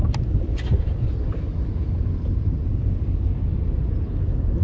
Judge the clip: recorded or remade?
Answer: recorded